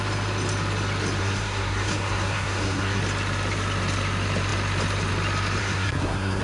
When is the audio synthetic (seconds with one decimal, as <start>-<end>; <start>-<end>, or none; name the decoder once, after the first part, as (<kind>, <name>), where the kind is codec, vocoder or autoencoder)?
1.2-3.0 (codec, SNAC); 5.6-6.4